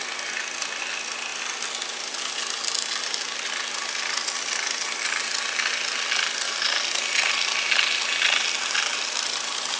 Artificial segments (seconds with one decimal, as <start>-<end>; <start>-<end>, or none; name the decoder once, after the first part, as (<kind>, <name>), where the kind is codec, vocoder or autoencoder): none